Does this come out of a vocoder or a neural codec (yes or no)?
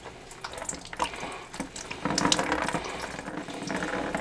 no